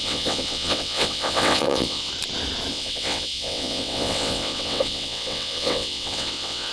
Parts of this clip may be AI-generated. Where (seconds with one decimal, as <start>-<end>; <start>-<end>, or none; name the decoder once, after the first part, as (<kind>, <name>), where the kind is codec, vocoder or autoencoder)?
0.0-2.1 (vocoder, WaveNeXt); 2.7-6.7